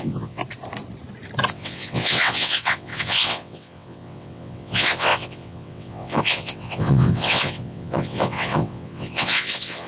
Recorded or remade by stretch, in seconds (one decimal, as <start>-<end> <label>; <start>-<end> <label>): 0.0-0.4 remade; 0.4-1.5 recorded; 1.5-9.9 remade

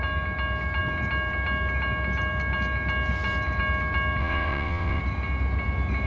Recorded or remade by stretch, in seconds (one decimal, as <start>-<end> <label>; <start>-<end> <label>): 0.0-4.2 recorded; 4.2-5.0 remade; 5.0-6.1 recorded

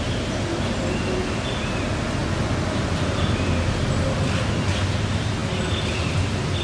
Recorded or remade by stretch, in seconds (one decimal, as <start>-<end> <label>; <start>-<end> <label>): 0.0-6.6 recorded

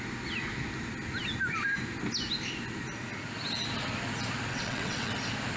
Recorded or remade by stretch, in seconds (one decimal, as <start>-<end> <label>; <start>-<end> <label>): 0.0-4.5 recorded; 4.5-5.1 remade; 5.1-5.6 recorded

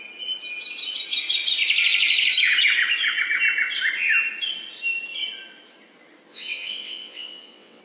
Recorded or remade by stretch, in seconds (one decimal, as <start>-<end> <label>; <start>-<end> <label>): 0.0-6.3 recorded; 6.3-7.8 remade

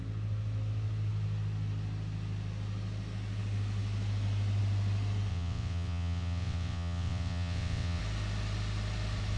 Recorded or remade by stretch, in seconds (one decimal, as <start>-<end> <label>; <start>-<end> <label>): 0.0-5.3 recorded; 5.3-8.0 remade; 8.0-9.4 recorded

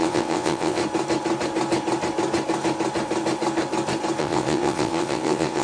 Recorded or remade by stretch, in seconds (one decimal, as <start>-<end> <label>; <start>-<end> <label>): 0.0-0.8 remade; 0.8-4.2 recorded; 4.2-5.6 remade

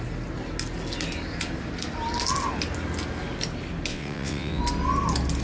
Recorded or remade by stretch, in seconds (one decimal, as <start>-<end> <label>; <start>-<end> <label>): 0.0-3.9 recorded; 3.9-4.6 remade; 4.6-5.4 recorded